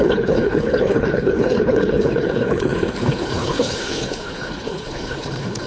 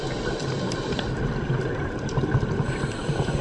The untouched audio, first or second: second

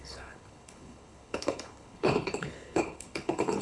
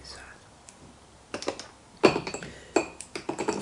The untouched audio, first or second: second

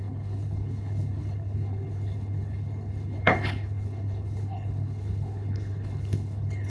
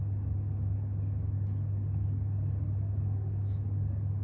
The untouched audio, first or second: second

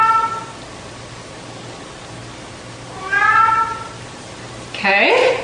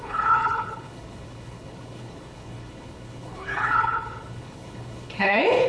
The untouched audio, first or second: first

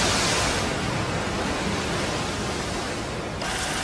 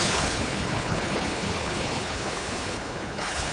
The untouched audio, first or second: first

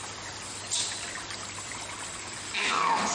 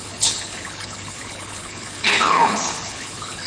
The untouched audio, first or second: first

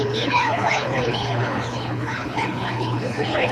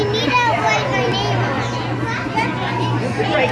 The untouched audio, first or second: second